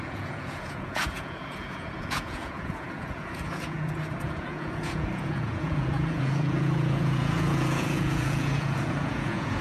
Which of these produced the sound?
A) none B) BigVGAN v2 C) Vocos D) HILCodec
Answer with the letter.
C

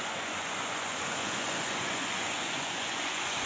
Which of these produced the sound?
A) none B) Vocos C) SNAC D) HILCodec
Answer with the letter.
B